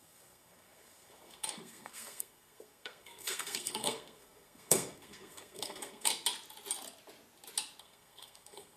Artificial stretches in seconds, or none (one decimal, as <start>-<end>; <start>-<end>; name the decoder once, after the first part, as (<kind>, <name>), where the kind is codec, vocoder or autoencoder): 0.0-6.1 (codec, SNAC); 7.8-8.8